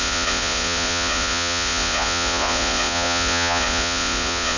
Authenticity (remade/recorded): remade